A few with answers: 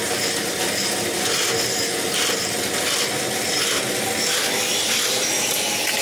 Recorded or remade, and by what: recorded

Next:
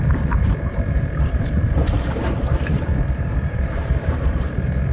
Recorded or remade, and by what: remade, vocoder, BigVGAN v2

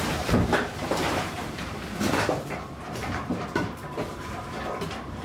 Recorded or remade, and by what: remade, vocoder, BigVGAN v2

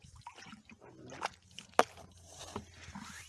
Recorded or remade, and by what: recorded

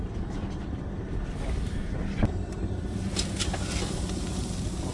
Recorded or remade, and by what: remade, vocoder, BigVGAN v2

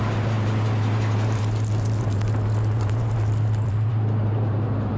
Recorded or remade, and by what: remade, vocoder, BigVGAN v2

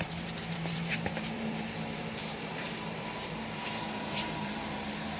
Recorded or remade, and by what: remade, vocoder, BigVGAN v2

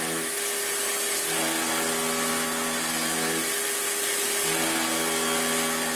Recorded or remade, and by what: recorded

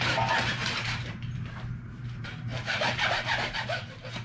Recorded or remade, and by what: remade, vocoder, BigVGAN v2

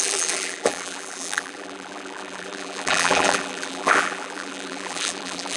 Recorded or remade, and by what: remade, vocoder, BigVGAN v2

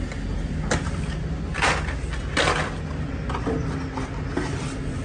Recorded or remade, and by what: recorded